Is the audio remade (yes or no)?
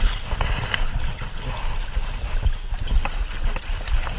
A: no